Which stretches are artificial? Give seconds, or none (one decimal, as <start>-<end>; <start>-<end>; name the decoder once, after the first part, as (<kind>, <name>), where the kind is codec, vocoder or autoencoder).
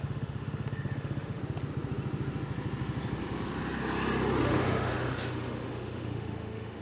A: 0.0-1.4 (autoencoder, DAC-VAE); 4.4-6.8